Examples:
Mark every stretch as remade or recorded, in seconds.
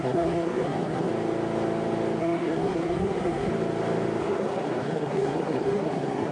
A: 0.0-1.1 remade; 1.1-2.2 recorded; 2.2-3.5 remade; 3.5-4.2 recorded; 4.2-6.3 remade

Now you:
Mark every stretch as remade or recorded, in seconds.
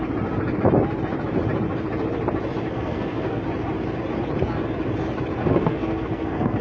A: 0.0-2.7 recorded; 2.7-3.4 remade; 3.4-5.4 recorded; 5.4-6.6 remade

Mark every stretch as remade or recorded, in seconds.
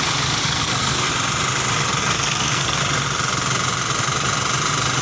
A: 0.0-0.4 recorded; 0.4-1.1 remade; 1.1-2.0 recorded; 2.0-2.8 remade; 2.8-5.0 recorded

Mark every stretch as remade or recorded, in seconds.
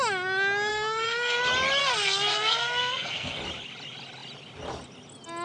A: 0.0-0.7 recorded; 0.7-1.4 remade; 1.4-1.8 recorded; 1.8-3.4 remade; 3.4-5.4 recorded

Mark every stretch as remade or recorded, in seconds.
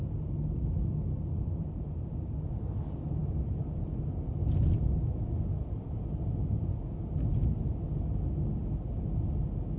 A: 0.0-9.8 recorded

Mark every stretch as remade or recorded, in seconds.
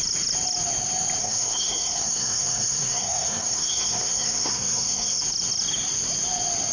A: 0.0-1.2 recorded; 1.2-5.2 remade; 5.2-6.7 recorded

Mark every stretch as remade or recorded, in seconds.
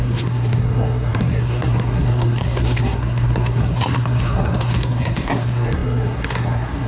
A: 0.0-6.9 remade